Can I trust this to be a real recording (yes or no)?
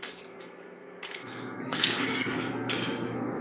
no